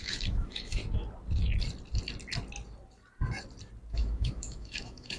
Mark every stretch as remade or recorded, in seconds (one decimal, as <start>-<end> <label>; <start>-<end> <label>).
0.0-0.8 remade; 0.8-3.9 recorded; 3.9-5.2 remade